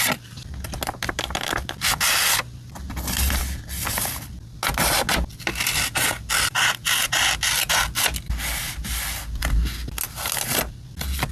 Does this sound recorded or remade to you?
recorded